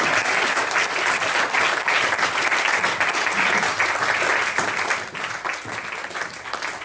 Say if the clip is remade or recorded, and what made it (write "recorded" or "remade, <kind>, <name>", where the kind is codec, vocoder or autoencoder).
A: recorded